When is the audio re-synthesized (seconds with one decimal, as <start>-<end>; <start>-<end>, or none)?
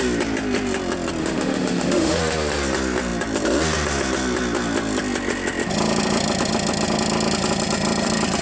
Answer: 1.2-2.2